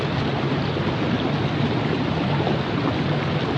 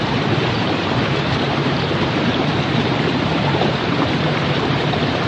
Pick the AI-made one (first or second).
second